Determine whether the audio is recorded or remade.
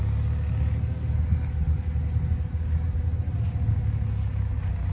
recorded